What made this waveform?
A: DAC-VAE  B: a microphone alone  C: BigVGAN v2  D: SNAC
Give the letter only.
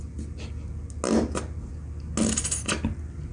B